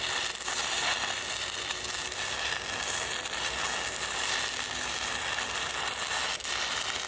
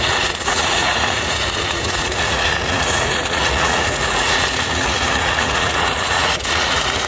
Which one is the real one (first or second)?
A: first